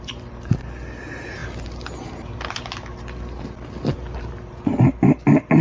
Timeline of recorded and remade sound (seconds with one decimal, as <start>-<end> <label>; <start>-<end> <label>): 0.0-5.6 recorded